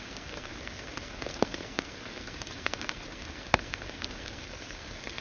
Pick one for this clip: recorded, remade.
remade